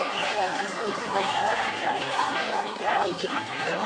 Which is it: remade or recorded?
remade